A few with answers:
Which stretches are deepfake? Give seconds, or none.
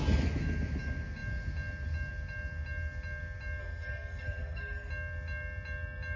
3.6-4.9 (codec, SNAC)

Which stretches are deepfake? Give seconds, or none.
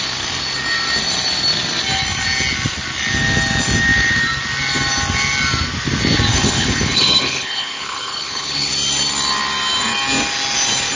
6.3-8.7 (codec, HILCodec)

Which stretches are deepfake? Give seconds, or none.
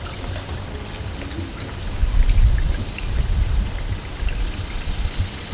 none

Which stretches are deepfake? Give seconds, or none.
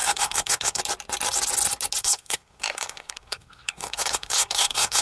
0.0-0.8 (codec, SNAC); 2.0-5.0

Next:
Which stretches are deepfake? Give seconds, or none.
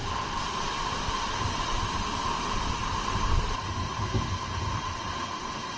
none